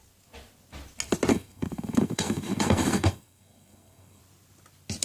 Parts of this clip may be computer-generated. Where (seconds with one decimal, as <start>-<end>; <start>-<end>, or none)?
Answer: 1.3-4.2